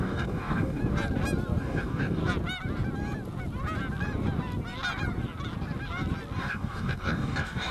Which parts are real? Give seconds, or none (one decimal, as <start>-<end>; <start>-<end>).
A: 0.8-1.6; 2.2-6.4